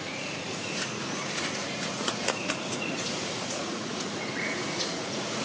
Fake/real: fake